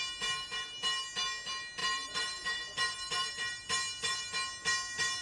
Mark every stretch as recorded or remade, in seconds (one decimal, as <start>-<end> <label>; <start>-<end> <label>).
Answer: 0.0-1.8 recorded; 1.8-3.3 remade; 3.3-5.2 recorded